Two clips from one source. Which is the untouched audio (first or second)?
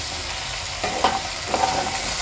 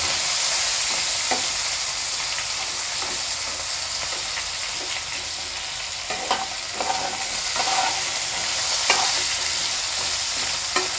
second